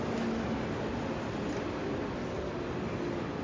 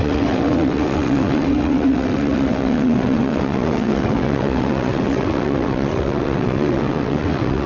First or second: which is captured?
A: first